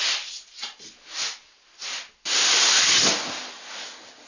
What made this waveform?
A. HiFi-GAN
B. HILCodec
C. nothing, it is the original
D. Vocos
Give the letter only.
C